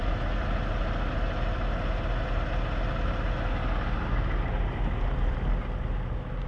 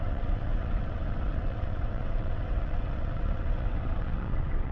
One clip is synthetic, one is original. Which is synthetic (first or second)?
second